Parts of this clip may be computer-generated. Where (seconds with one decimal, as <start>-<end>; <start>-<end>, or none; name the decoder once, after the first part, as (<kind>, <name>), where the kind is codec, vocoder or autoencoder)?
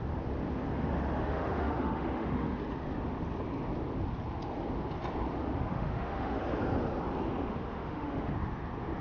1.2-2.6 (autoencoder, DAC-VAE); 5.7-6.4; 7.4-8.3